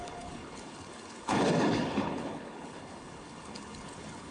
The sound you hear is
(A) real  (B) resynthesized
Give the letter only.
B